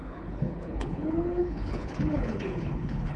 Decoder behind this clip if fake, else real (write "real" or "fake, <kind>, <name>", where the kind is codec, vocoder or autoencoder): fake, codec, HILCodec